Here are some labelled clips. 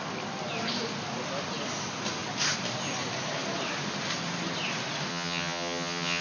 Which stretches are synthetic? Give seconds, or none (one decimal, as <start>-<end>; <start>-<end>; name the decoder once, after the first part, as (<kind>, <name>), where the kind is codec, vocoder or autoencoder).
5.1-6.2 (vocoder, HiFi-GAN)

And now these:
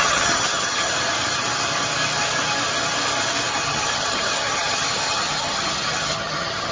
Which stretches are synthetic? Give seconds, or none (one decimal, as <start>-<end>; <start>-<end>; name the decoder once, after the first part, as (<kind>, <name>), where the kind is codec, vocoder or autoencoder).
0.0-0.9 (vocoder, HiFi-GAN); 3.5-6.7

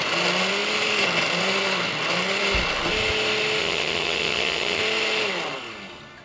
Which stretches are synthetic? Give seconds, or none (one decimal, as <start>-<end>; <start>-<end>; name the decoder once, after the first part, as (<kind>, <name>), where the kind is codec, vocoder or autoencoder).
3.6-4.8 (vocoder, HiFi-GAN)

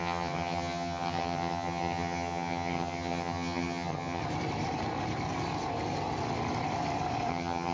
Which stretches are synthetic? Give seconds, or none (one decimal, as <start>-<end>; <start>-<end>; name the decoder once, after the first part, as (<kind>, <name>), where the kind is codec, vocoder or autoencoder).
0.0-4.2 (vocoder, HiFi-GAN); 7.3-7.7

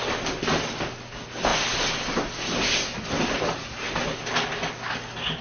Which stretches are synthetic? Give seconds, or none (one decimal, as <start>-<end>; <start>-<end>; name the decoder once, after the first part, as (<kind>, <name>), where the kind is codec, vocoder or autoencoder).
none